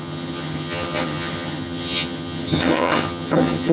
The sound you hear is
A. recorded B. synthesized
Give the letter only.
B